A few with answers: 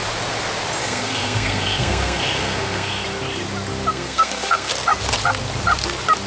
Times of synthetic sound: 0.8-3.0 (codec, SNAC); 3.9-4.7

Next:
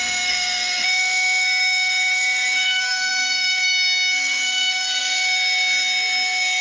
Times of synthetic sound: 0.0-6.6 (codec, SNAC)

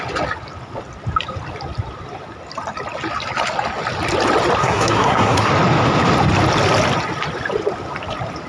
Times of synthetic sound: 4.6-5.5 (codec, SNAC)

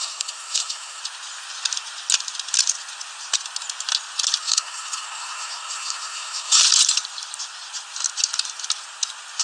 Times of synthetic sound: 0.0-1.0 (codec, SNAC); 4.4-6.6

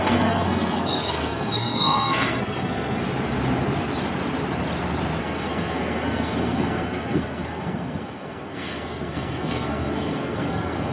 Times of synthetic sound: 0.0-3.0 (codec, SNAC); 5.2-10.9

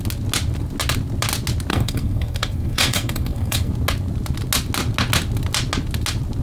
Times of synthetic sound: 1.7-3.7 (codec, SNAC)

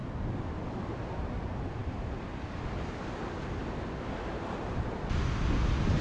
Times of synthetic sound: none